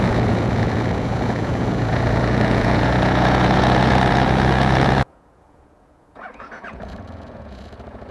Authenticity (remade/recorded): remade